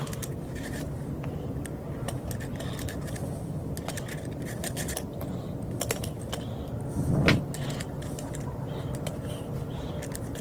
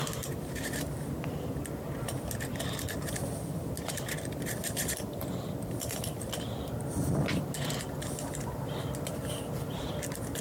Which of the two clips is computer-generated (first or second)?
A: second